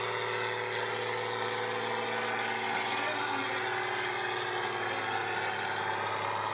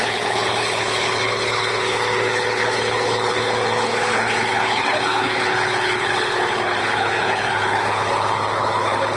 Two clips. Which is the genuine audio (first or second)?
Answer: first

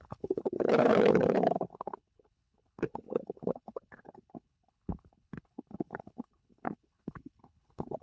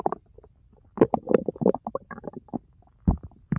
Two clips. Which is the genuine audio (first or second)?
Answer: second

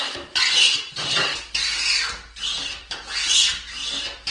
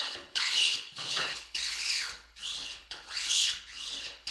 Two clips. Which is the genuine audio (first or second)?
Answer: first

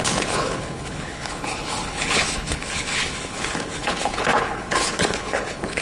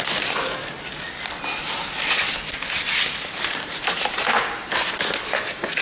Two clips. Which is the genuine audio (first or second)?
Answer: second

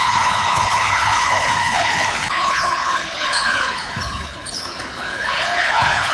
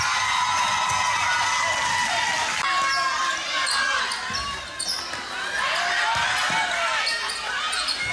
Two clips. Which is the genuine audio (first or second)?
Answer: second